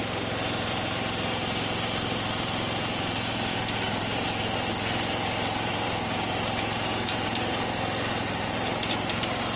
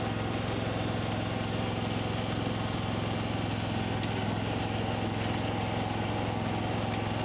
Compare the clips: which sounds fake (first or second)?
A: first